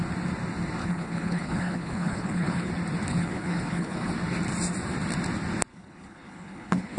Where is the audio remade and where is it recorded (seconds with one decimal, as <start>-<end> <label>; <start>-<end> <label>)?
0.0-0.8 recorded; 0.8-2.7 remade; 2.7-3.1 recorded; 3.1-4.1 remade; 4.1-5.7 recorded; 5.7-7.0 remade

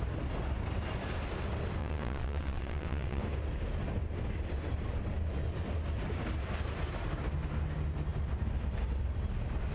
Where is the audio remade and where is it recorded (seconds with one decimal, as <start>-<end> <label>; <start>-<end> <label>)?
0.0-1.8 recorded; 1.8-3.2 remade; 3.2-9.7 recorded

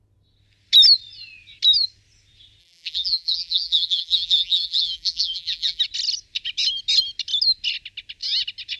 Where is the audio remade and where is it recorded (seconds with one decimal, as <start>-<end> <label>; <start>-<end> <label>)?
0.0-2.6 recorded; 2.6-5.8 remade; 5.8-8.8 recorded

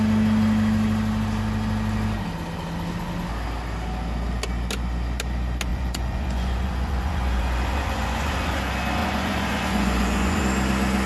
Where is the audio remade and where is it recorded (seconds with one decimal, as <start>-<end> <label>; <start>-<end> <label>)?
0.0-5.7 recorded; 5.7-8.6 remade; 8.6-9.0 recorded; 9.0-10.4 remade; 10.4-11.1 recorded

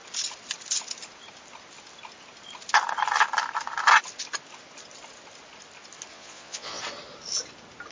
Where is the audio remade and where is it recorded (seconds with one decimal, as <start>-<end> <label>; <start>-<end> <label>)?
0.0-6.1 recorded; 6.1-6.8 remade; 6.8-7.9 recorded